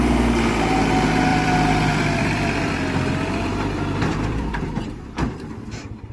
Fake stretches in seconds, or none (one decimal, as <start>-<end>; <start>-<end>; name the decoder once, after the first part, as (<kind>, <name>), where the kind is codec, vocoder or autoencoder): 1.3-5.0 (vocoder, BigVGAN v2)